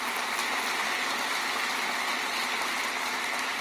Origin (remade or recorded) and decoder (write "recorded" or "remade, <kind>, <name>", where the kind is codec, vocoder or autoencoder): recorded